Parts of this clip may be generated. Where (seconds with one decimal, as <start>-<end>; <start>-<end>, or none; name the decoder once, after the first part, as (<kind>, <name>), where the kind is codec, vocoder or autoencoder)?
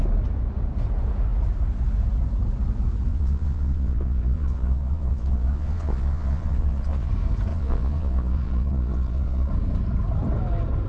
3.1-7.1 (vocoder, Vocos); 7.5-9.5